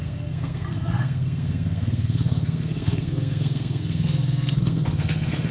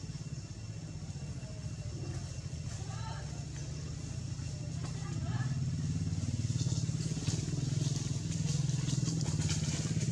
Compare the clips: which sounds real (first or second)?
second